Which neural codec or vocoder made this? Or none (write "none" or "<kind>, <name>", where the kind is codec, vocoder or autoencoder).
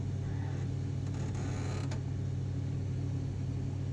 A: none